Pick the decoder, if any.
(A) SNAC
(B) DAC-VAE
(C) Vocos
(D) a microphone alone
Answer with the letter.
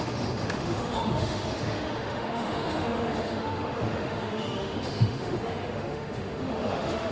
B